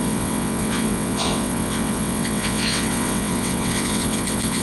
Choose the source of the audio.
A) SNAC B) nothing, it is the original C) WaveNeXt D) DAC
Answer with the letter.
C